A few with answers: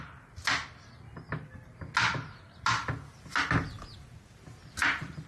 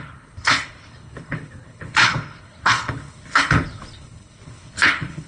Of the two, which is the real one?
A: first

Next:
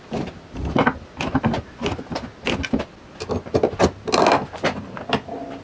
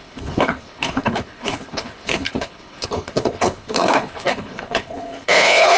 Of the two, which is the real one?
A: first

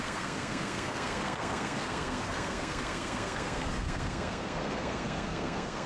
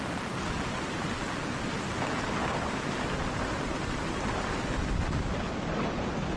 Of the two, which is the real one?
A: second